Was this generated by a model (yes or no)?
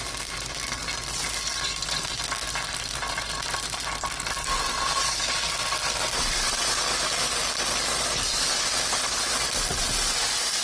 no